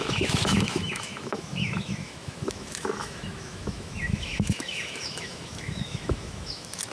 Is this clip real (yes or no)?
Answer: no